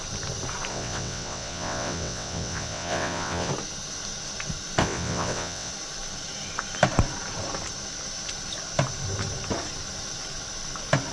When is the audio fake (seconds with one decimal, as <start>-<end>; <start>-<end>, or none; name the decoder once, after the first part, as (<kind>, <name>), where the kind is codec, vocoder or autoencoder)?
0.7-3.5 (vocoder, WaveNeXt); 4.8-5.7